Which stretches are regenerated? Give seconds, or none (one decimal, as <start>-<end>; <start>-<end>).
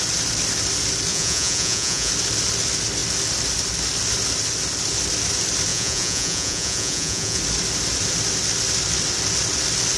1.1-2.1; 5.7-7.4